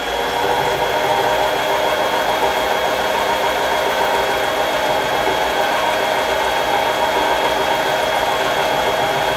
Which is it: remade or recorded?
recorded